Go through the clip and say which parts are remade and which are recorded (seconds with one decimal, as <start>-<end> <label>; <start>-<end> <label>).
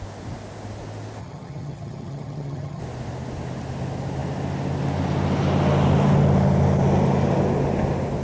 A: 0.0-1.2 recorded; 1.2-2.8 remade; 2.8-8.2 recorded